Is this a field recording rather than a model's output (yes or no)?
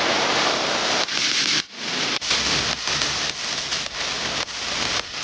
yes